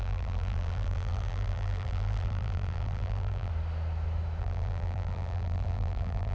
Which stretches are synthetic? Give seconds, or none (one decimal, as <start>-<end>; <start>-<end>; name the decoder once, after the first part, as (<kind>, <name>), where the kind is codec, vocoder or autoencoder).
0.0-3.5 (vocoder, BigVGAN v2); 4.4-6.3